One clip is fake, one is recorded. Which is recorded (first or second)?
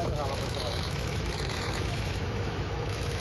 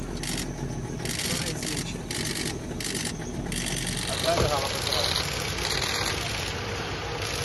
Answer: second